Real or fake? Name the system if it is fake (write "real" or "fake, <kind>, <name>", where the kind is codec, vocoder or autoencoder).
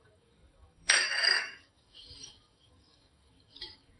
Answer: fake, codec, DAC